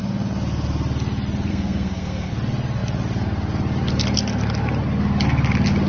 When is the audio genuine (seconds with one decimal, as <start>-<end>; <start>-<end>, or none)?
0.0-1.5; 2.3-5.9